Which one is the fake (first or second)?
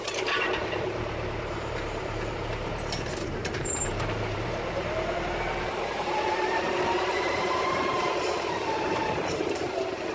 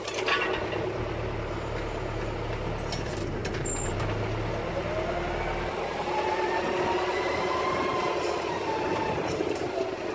first